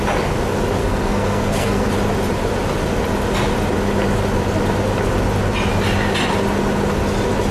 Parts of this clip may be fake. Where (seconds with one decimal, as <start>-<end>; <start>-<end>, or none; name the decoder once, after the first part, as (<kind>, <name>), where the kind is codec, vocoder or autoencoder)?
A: 0.8-1.9 (codec, SNAC)